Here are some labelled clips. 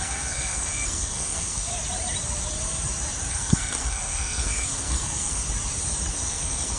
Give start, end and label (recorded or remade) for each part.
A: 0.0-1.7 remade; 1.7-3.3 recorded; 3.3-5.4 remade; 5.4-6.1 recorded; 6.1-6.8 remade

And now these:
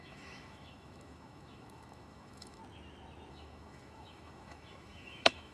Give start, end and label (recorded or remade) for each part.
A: 0.0-2.6 remade; 2.6-3.3 recorded; 3.3-5.5 remade

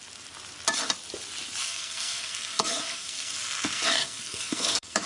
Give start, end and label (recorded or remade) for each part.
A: 0.0-1.6 recorded; 1.6-5.1 remade

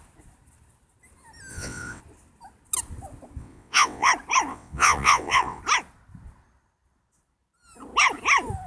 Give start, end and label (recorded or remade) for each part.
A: 0.0-1.5 recorded; 1.5-2.0 remade; 2.0-3.4 recorded; 3.4-4.1 remade; 4.1-4.5 recorded; 4.5-5.6 remade; 5.6-8.7 recorded

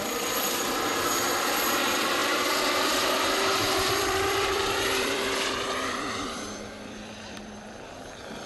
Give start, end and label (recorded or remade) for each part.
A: 0.0-8.5 remade

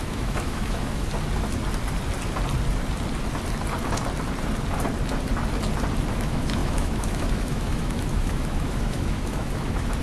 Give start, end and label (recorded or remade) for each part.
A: 0.0-1.1 remade; 1.1-6.1 recorded; 6.1-10.0 remade